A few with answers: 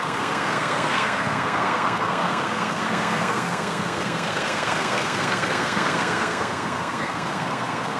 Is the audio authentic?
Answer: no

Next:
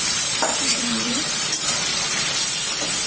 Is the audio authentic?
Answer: no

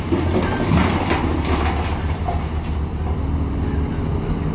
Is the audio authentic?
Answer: yes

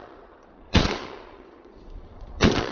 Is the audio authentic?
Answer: no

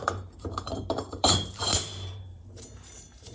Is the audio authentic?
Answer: no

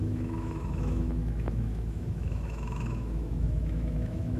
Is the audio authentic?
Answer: no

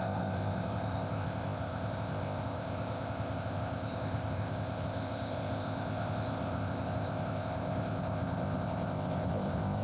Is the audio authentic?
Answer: no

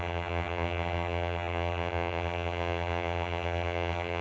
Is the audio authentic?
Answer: no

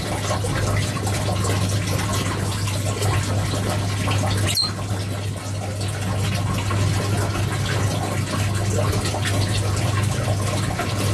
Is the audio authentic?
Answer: yes